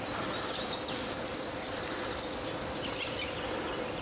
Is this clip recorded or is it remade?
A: recorded